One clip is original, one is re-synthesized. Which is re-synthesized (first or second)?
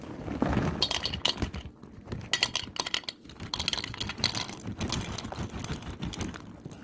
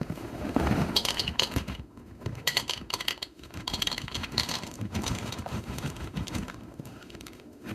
second